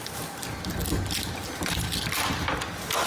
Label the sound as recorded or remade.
recorded